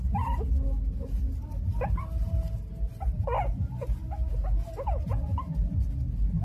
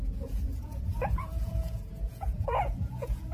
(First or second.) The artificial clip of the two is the second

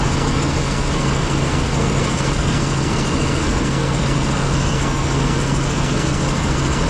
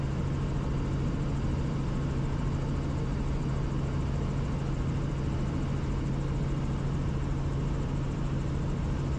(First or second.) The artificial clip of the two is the first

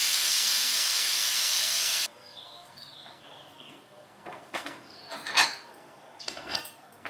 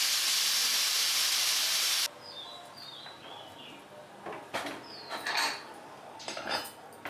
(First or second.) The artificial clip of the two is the first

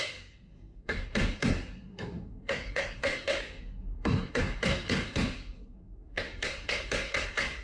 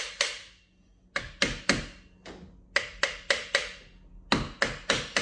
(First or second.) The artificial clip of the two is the first